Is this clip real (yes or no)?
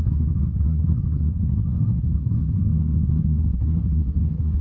no